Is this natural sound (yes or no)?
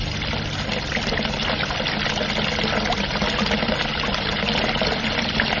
yes